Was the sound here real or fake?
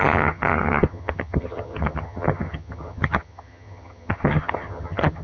fake